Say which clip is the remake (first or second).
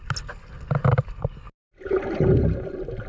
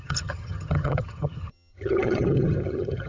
second